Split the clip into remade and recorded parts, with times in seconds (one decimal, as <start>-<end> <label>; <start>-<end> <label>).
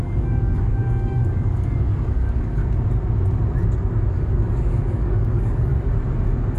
0.0-2.6 remade; 2.6-4.1 recorded; 4.1-5.7 remade; 5.7-6.6 recorded